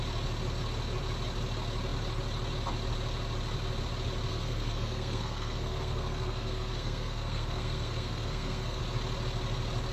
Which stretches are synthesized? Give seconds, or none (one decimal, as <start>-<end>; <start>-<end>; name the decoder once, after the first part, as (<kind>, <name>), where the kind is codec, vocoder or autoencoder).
4.3-8.8 (codec, SNAC)